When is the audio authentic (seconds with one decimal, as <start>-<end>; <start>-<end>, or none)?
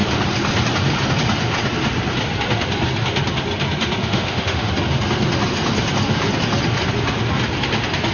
0.0-4.0; 4.7-8.1